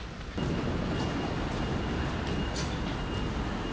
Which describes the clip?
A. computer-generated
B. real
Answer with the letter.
B